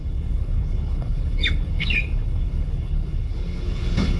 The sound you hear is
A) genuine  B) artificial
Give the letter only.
B